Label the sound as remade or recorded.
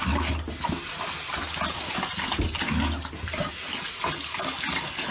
recorded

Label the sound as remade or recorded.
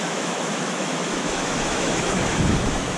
remade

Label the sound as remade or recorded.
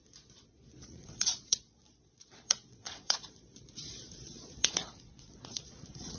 remade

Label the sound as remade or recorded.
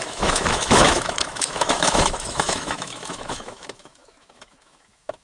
remade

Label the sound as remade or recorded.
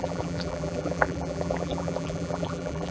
remade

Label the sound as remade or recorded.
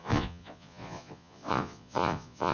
remade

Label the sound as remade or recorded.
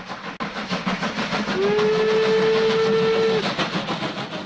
recorded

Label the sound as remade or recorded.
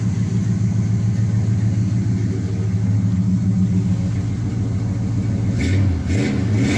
recorded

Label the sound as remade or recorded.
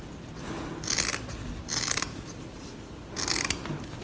recorded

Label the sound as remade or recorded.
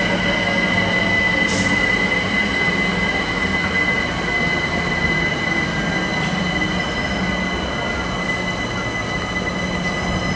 recorded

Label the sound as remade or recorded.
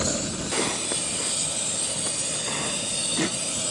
recorded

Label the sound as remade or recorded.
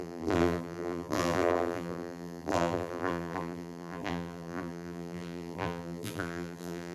remade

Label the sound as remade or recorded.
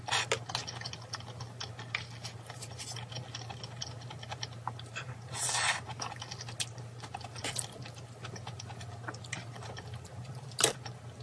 recorded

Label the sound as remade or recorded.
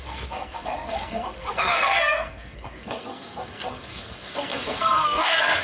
remade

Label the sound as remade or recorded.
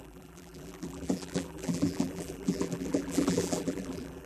remade